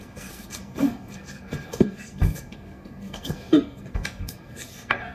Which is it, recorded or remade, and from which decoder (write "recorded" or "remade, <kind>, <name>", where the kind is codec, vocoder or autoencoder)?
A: remade, codec, SNAC